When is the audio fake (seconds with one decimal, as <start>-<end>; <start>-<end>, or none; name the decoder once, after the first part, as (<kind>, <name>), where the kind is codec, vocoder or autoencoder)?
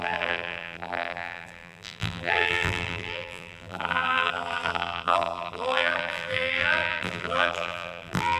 0.0-8.4 (vocoder, BigVGAN v2)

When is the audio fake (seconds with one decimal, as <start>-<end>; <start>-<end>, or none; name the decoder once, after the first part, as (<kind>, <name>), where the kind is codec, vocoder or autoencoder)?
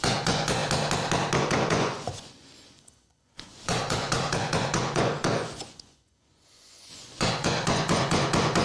0.0-0.6 (vocoder, Vocos); 1.4-8.6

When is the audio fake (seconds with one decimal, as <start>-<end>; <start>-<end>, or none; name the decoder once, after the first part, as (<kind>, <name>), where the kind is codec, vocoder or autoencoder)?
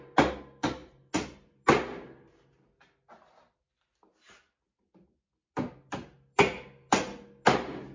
none